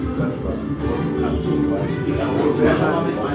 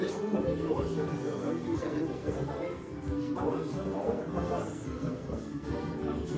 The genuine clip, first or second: first